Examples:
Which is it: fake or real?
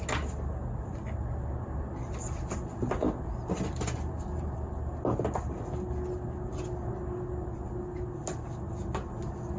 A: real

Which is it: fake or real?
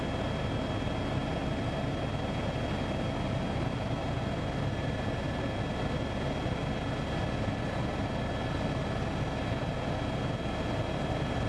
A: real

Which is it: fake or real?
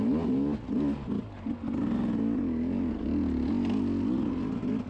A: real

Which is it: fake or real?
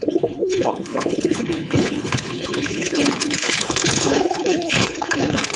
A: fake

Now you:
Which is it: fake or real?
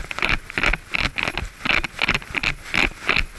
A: real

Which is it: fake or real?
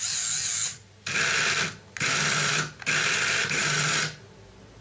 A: real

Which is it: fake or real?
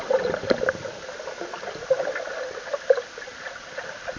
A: real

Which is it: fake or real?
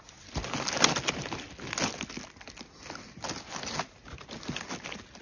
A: real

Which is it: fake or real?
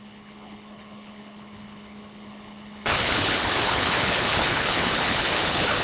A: fake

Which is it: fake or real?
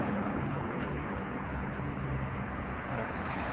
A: fake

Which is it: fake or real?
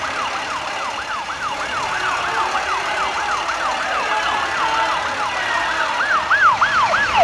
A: real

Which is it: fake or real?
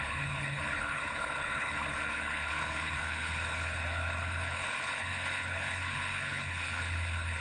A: fake